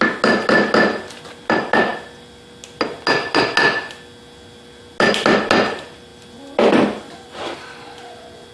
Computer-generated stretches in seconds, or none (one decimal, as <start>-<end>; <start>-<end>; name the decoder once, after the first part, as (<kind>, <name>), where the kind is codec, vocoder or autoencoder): none